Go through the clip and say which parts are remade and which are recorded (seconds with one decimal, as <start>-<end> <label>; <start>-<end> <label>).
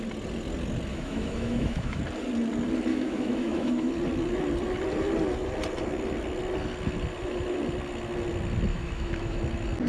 0.0-0.9 recorded; 0.9-2.0 remade; 2.0-2.9 recorded; 2.9-3.9 remade; 3.9-8.7 recorded; 8.7-9.4 remade; 9.4-9.9 recorded